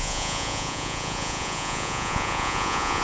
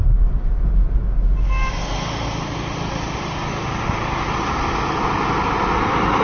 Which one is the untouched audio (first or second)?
second